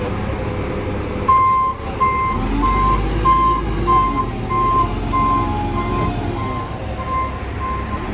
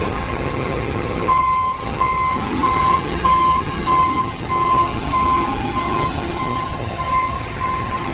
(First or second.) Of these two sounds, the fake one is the second